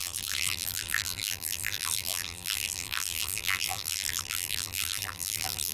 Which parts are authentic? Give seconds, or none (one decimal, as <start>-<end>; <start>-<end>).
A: none